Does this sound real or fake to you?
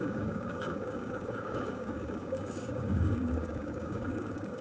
fake